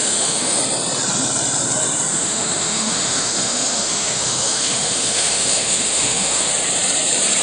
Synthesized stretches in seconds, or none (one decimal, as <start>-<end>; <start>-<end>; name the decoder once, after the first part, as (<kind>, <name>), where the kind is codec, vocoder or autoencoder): 0.0-0.6 (autoencoder, DAC-VAE); 2.1-6.5